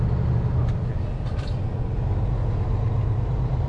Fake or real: real